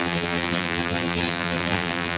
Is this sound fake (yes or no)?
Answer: yes